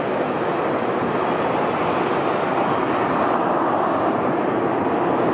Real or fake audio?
real